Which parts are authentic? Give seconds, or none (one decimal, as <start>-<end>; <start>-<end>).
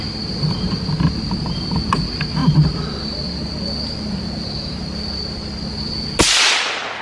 0.0-7.0